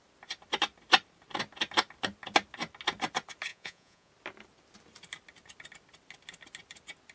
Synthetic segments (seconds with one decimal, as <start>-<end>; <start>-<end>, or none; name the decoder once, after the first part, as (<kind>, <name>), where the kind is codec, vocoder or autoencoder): 3.5-4.1 (vocoder, Vocos)